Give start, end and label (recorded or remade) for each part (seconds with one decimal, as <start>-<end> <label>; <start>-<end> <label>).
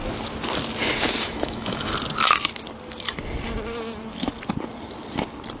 0.0-1.2 recorded; 1.2-1.9 remade; 1.9-5.6 recorded